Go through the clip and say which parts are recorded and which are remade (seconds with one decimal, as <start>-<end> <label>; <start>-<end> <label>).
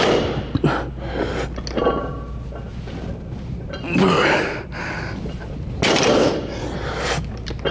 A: 0.0-2.7 recorded; 2.7-7.3 remade; 7.3-7.7 recorded